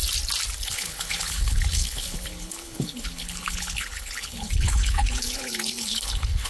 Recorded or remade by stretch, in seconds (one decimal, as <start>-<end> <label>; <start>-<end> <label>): 0.0-0.6 recorded; 0.6-6.5 remade